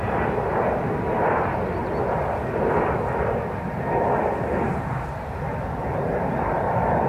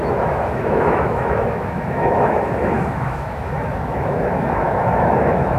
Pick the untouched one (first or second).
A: first